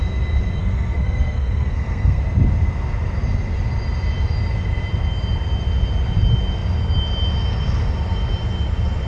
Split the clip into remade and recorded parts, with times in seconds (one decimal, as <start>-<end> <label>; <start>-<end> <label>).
0.0-0.6 recorded; 0.6-2.2 remade; 2.2-9.1 recorded